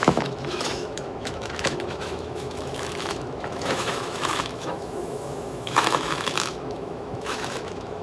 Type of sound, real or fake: fake